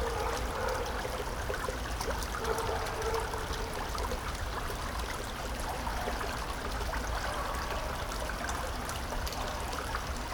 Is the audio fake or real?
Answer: real